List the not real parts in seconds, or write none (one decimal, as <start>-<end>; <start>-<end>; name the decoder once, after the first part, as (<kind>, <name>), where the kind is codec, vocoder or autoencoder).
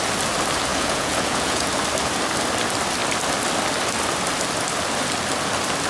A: 0.7-1.7 (vocoder, Vocos)